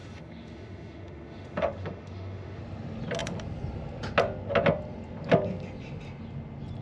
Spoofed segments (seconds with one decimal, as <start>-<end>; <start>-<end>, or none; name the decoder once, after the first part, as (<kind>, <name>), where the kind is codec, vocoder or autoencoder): 0.0-2.6 (autoencoder, DAC-VAE)